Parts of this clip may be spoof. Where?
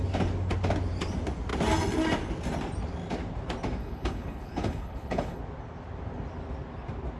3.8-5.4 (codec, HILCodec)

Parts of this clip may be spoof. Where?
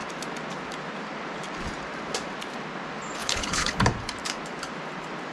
3.2-3.8 (codec, HILCodec)